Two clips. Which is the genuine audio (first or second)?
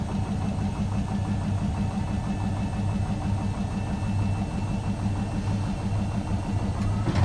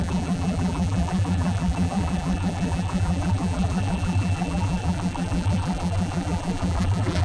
first